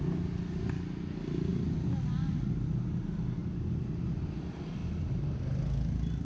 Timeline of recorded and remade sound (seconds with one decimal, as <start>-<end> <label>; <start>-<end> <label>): 0.0-6.2 recorded